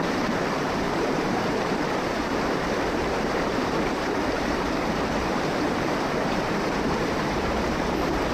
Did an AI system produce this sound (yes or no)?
yes